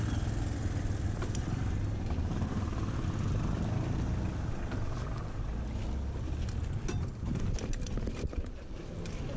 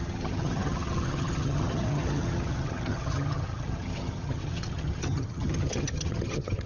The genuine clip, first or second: first